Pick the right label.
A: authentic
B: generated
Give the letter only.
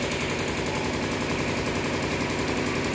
A